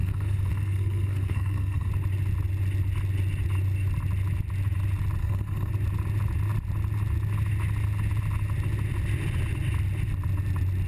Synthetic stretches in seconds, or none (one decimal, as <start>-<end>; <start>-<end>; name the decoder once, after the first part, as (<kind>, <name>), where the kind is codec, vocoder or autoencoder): 0.0-1.9 (codec, SNAC); 5.2-5.7